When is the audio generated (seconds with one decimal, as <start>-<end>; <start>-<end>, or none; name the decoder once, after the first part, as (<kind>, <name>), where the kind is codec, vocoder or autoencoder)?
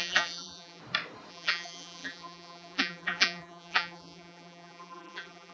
0.0-0.8 (vocoder, BigVGAN v2); 1.3-5.5